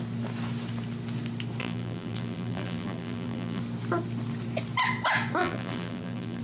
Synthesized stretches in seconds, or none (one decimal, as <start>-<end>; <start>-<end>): 1.6-3.6; 5.4-6.4